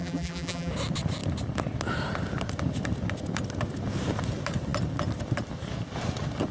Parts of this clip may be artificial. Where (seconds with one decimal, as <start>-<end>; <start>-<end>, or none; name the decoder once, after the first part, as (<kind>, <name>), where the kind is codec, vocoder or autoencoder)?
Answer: 0.0-0.7 (vocoder, BigVGAN v2)